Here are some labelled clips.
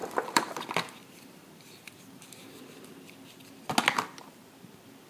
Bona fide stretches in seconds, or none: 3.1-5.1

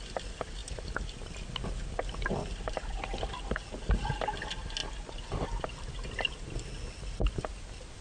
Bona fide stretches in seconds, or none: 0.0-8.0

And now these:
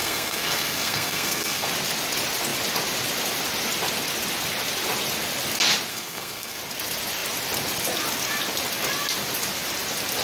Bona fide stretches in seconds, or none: 1.7-5.9; 6.6-10.2

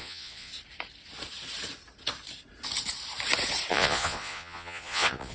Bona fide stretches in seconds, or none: 0.5-3.7

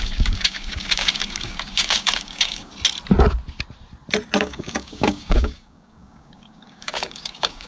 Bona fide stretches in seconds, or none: 2.7-4.4

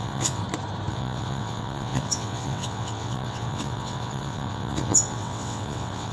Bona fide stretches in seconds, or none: 0.4-0.9

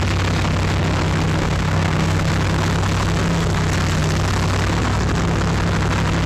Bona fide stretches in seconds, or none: 0.0-1.4; 2.3-6.3

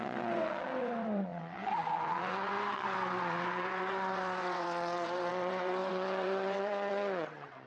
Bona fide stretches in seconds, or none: none